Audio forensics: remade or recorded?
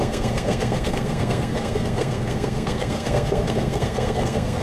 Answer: remade